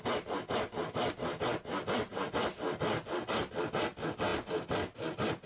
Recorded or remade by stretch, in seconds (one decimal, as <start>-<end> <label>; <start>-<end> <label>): 0.0-5.5 recorded